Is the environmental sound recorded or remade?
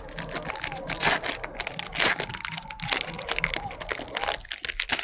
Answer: recorded